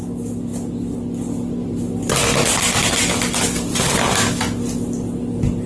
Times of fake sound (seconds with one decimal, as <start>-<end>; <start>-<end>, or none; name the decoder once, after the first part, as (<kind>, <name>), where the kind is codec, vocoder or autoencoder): none